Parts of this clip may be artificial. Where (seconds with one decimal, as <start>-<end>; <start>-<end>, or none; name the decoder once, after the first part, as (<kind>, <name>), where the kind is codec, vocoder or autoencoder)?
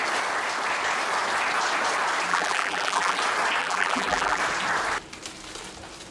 2.3-3.2 (vocoder, BigVGAN v2); 3.6-4.4